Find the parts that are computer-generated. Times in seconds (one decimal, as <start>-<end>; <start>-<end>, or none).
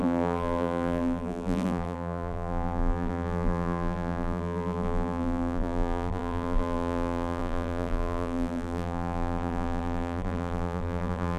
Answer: 0.0-11.4